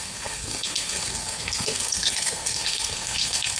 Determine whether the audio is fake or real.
fake